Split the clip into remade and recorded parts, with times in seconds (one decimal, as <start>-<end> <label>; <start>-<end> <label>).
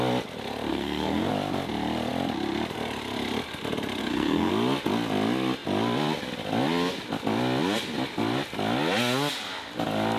0.0-0.7 recorded; 0.7-1.3 remade; 1.3-4.0 recorded; 4.0-4.5 remade; 4.5-10.2 recorded